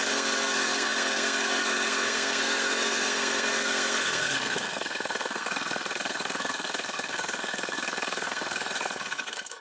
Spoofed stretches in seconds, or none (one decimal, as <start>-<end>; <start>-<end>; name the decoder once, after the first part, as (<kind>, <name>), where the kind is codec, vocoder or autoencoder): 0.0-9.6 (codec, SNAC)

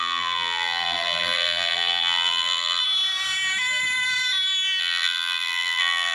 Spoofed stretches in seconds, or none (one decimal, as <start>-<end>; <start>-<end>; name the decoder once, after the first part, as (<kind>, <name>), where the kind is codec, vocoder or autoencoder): 0.0-2.8 (vocoder, BigVGAN v2); 4.8-6.1

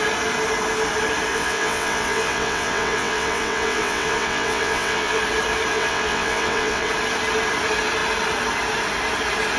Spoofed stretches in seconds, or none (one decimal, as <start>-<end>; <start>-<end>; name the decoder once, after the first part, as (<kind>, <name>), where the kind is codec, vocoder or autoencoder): 1.3-5.2 (vocoder, WaveNeXt); 5.7-6.9

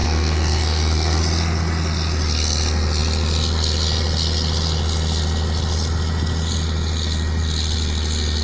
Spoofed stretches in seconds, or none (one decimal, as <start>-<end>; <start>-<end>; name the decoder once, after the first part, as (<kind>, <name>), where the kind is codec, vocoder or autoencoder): 0.0-1.2 (codec, SNAC)

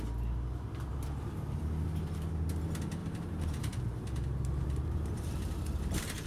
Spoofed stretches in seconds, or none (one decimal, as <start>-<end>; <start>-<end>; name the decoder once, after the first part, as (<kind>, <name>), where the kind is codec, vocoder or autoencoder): 0.9-1.6 (vocoder, BigVGAN v2); 3.0-6.3

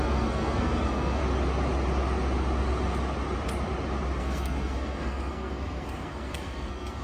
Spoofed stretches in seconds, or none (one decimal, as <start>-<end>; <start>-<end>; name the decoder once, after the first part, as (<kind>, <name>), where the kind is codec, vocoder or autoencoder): 0.0-1.2 (codec, SNAC); 4.2-7.0